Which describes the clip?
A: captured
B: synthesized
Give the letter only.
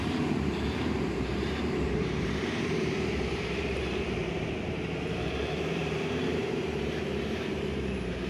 B